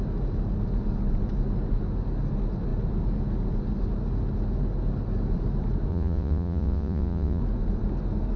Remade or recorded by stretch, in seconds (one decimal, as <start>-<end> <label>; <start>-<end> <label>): 0.0-5.9 recorded; 5.9-7.4 remade; 7.4-8.4 recorded